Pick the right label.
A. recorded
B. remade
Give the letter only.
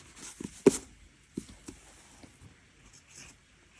A